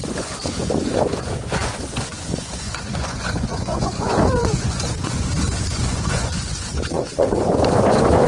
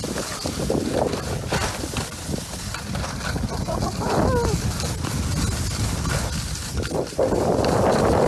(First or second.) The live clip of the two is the second